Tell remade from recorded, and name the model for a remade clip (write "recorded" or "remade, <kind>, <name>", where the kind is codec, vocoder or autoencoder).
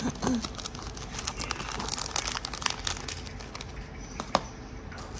recorded